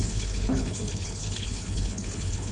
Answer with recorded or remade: remade